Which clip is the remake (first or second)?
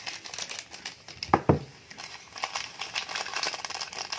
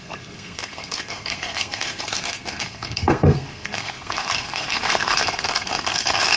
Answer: second